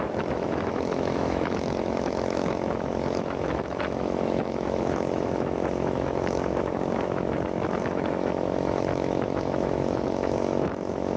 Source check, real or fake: fake